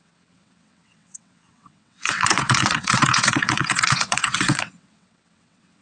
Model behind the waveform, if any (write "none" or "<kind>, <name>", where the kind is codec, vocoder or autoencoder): vocoder, WaveNeXt